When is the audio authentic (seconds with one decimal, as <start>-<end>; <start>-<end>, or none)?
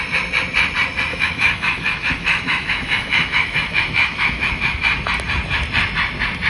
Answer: 0.0-1.1; 4.8-6.5